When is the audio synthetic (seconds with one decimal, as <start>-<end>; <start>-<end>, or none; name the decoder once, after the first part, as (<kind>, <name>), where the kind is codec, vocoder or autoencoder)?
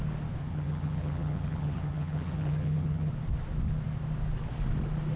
0.4-3.1 (vocoder, HiFi-GAN)